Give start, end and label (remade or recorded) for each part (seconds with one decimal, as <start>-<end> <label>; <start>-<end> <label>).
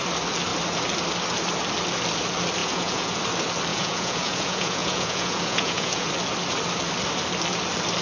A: 0.0-2.6 recorded; 2.6-3.2 remade; 3.2-3.7 recorded; 3.7-6.1 remade; 6.1-8.0 recorded